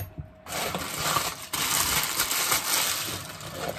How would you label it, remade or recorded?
recorded